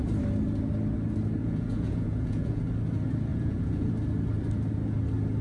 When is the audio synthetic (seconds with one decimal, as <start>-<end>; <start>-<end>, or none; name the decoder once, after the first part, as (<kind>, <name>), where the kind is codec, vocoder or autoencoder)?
1.4-2.6 (vocoder, Vocos); 3.3-3.9